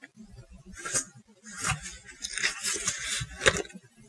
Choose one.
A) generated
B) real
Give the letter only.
B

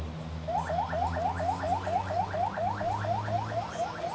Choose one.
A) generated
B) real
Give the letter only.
B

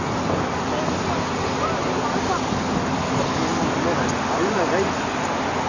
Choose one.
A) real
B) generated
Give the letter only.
A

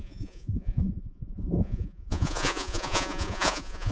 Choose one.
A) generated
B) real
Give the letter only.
A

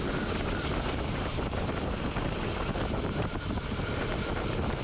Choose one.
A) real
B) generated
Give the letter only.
B